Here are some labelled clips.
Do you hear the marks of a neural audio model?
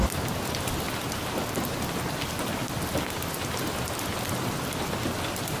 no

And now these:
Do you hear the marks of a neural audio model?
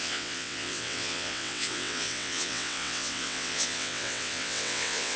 yes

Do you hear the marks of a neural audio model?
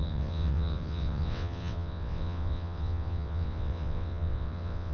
yes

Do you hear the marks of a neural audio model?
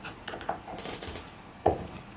yes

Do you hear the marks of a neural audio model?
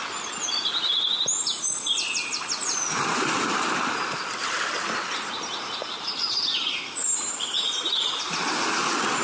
no